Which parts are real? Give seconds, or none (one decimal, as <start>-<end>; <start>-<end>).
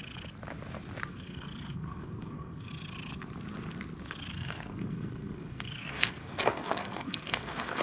0.0-1.1; 2.7-4.3